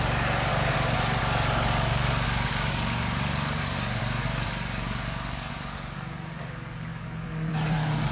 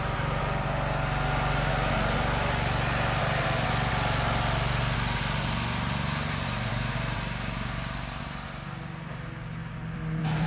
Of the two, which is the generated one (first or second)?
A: first